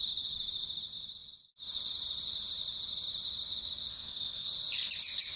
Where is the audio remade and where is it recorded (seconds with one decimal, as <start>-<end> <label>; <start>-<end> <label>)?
0.0-3.9 recorded; 3.9-4.5 remade; 4.5-5.4 recorded